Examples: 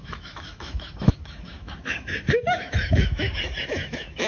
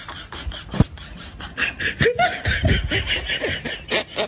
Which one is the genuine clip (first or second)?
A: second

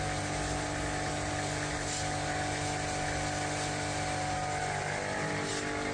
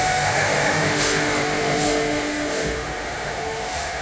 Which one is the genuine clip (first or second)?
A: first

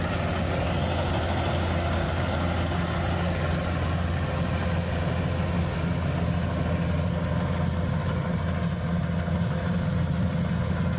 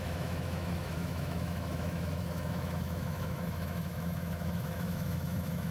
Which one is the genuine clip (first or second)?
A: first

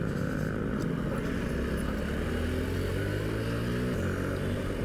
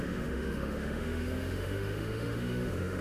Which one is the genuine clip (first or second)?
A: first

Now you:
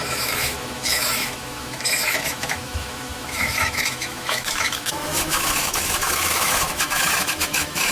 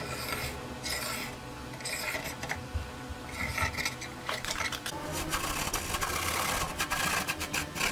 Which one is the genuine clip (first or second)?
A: second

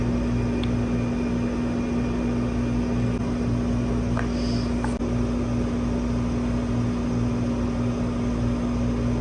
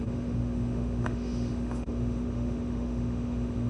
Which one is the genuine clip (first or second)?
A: first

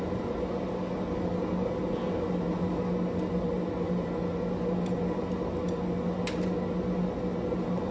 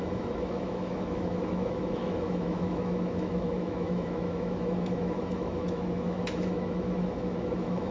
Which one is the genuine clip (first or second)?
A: first